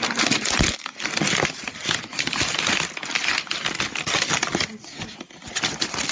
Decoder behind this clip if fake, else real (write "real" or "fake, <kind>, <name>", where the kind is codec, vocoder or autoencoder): real